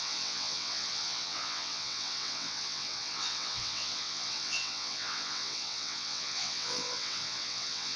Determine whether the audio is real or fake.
fake